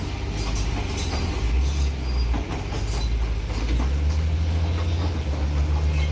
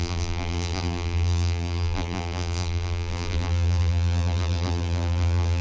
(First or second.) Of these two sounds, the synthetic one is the second